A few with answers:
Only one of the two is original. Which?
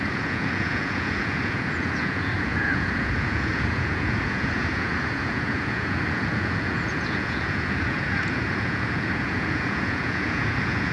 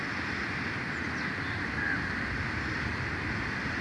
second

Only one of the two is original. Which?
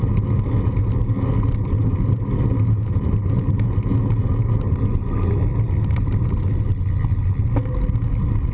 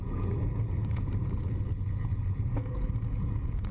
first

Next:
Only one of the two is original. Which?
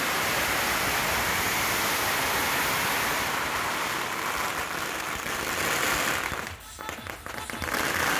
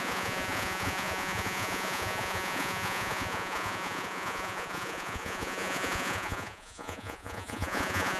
first